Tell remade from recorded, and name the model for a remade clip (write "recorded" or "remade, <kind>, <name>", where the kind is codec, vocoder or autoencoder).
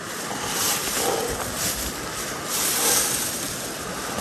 recorded